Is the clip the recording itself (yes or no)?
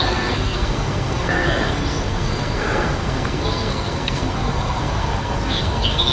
no